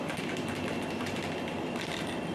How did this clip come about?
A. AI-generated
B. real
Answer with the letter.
A